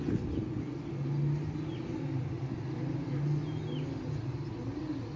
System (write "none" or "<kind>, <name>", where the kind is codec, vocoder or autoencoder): none